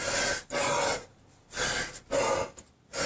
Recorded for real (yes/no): yes